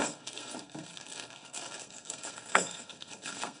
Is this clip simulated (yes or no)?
yes